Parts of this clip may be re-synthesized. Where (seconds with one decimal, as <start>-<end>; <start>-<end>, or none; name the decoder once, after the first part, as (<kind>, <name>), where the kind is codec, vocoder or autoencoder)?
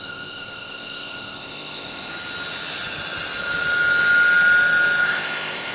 0.0-2.1 (codec, ZipCodec); 5.0-5.7